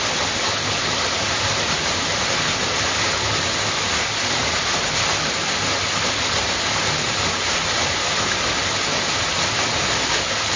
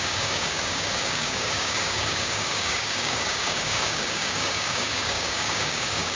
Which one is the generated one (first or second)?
second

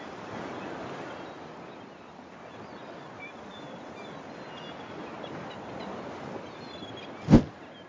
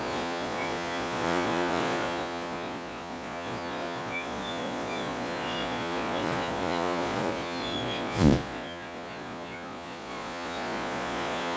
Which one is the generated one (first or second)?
second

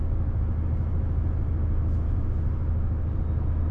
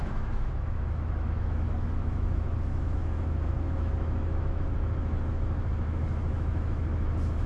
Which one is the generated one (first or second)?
second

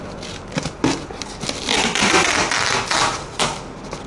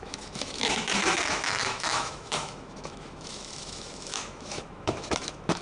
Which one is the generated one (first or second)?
second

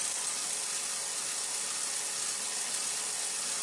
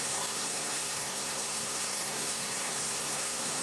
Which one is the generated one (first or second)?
second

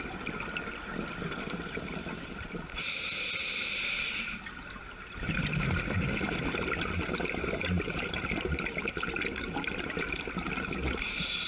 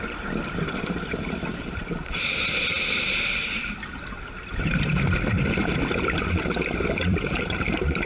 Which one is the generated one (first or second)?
second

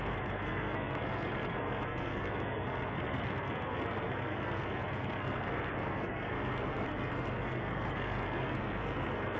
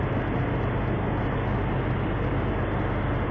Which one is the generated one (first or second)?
first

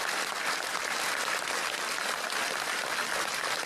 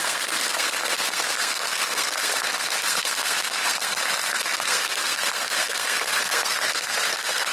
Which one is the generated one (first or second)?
second